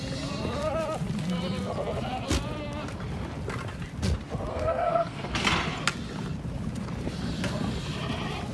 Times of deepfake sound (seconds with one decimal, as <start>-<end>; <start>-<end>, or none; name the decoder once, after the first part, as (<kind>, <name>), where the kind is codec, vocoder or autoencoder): 4.5-5.3 (codec, SNAC)